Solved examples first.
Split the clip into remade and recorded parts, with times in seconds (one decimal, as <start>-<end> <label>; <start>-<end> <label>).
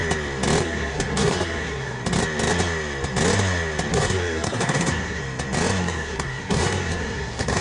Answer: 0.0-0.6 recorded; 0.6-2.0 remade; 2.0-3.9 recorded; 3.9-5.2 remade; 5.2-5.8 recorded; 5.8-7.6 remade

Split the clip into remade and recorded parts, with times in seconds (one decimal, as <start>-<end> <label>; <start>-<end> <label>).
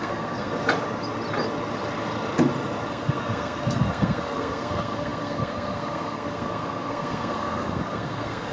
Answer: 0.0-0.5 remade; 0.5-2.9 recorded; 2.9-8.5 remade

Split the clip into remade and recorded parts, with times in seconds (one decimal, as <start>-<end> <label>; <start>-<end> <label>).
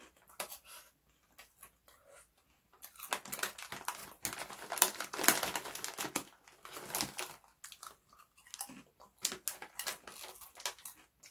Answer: 0.0-11.3 recorded